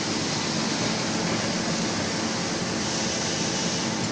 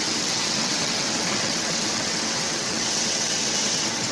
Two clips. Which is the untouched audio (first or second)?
first